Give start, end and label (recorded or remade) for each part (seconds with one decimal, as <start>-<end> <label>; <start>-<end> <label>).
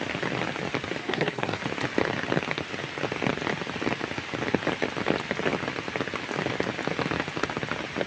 0.0-1.0 recorded; 1.0-1.6 remade; 1.6-8.1 recorded